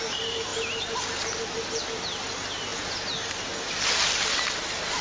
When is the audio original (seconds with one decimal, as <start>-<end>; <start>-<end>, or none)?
0.0-5.0